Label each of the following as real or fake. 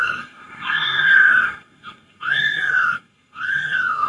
fake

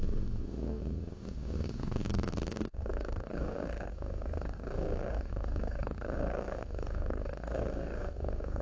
fake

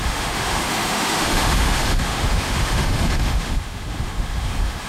fake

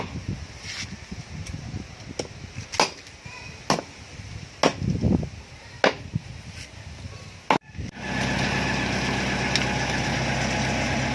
real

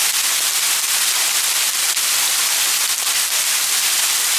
real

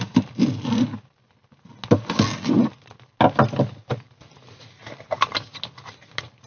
real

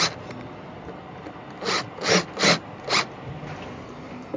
real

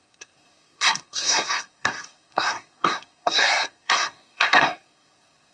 fake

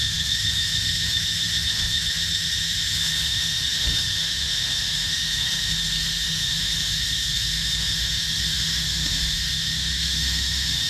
fake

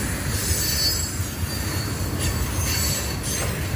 real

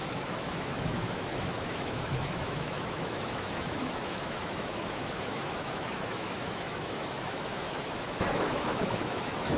fake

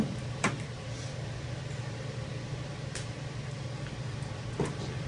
fake